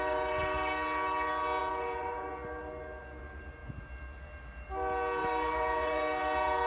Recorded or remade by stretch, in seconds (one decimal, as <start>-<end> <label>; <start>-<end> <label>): 0.0-1.6 recorded; 1.6-2.3 remade; 2.3-5.2 recorded; 5.2-6.0 remade; 6.0-6.7 recorded